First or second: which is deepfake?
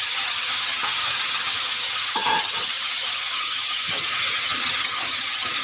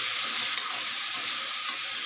first